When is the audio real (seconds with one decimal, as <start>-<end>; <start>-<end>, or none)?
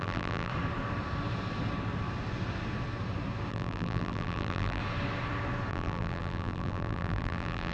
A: 0.5-3.5; 4.8-5.7